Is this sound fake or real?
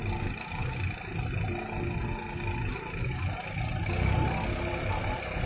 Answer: real